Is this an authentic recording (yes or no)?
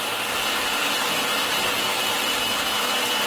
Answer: yes